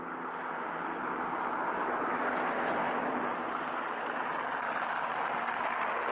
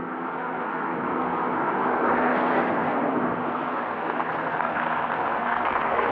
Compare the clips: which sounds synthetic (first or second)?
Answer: second